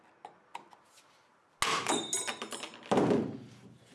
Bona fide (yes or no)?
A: yes